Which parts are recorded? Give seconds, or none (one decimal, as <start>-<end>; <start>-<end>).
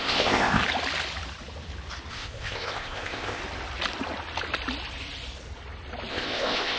0.6-2.1; 3.4-6.1